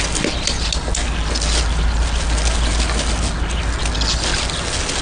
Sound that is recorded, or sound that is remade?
recorded